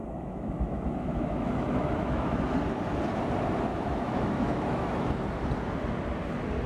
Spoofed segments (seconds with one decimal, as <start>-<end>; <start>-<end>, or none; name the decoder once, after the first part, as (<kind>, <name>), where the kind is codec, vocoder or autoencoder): 0.0-2.4 (autoencoder, DAC-VAE); 3.7-5.1